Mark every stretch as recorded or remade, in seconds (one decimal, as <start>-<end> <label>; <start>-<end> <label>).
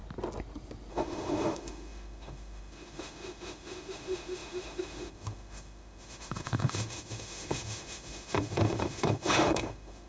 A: 0.0-0.9 recorded; 0.9-10.1 remade